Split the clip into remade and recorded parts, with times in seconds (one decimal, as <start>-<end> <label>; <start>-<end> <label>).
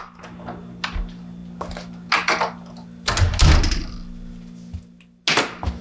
0.0-5.8 recorded